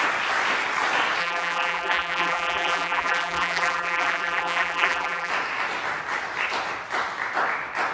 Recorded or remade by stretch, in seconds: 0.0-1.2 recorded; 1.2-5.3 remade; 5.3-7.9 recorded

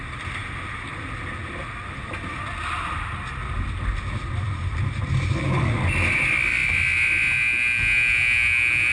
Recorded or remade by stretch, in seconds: 0.0-8.9 recorded